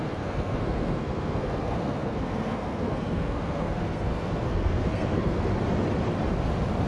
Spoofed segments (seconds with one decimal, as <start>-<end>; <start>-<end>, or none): 0.0-5.5